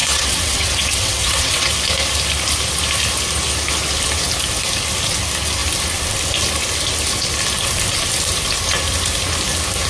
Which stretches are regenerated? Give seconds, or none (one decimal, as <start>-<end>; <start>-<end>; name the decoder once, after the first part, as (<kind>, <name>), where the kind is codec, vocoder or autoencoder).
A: 0.0-1.7 (vocoder, WaveNeXt)